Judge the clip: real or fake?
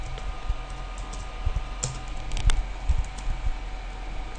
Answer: real